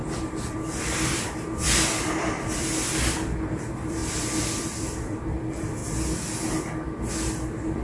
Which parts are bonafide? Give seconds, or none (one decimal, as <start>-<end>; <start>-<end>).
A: 5.8-7.1